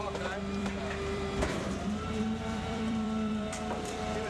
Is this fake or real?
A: fake